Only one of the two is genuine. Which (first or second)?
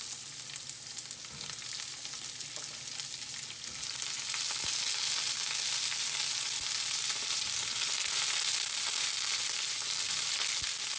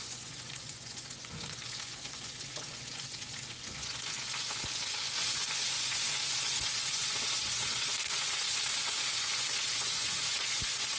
first